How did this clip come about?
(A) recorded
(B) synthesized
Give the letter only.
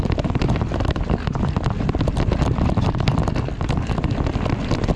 A